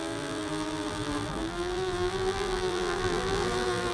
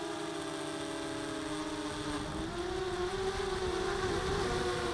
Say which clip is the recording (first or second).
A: second